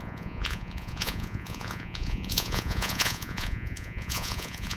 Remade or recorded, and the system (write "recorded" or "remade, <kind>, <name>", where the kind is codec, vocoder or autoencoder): remade, vocoder, Vocos